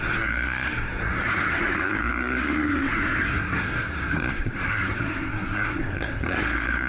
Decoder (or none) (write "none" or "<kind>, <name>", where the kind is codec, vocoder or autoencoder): codec, SNAC